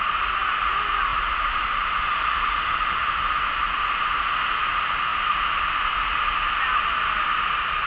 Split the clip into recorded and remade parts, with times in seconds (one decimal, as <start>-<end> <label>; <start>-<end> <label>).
0.0-1.1 recorded; 1.1-3.7 remade; 3.7-7.9 recorded